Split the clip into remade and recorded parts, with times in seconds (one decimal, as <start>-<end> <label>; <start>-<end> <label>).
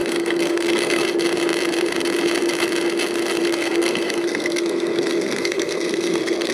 0.0-1.0 remade; 1.0-3.4 recorded; 3.4-6.5 remade